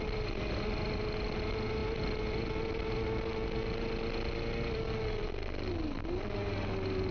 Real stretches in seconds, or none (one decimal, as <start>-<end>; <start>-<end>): 0.0-7.1